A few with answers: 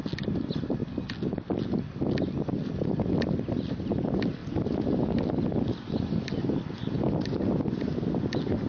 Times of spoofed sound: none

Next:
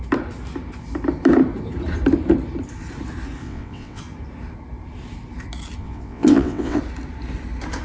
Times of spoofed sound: 3.4-4.0 (vocoder, WaveNeXt); 5.8-6.8